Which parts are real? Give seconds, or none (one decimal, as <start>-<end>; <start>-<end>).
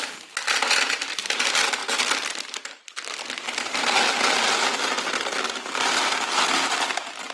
0.0-7.3